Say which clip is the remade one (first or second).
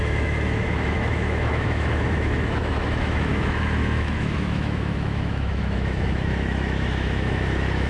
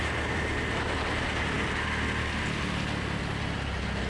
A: first